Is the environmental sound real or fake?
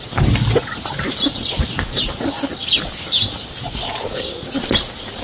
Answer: real